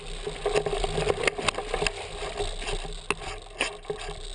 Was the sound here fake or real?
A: real